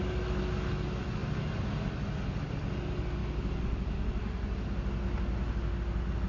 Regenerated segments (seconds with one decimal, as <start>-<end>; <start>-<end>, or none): none